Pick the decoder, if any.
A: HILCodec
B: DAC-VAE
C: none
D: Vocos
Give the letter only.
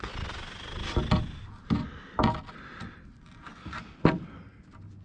C